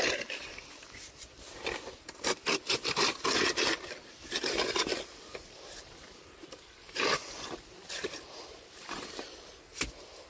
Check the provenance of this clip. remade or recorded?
remade